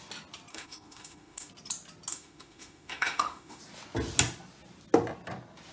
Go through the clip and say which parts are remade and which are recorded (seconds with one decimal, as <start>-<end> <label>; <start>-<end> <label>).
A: 0.0-0.5 recorded; 0.5-1.5 remade; 1.5-2.1 recorded; 2.1-3.6 remade; 3.6-5.7 recorded